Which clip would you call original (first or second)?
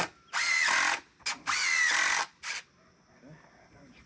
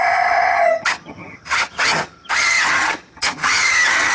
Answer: first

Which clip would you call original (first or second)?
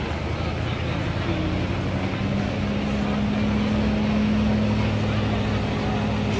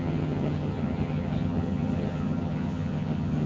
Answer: first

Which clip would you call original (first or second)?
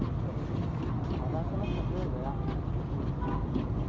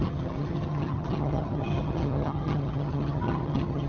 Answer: first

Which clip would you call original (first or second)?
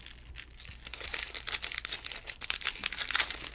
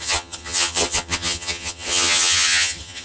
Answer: first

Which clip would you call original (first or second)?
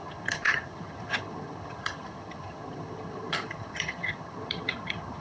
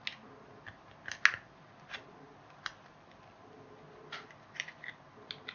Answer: second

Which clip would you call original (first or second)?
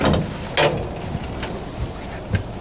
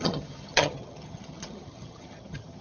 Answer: first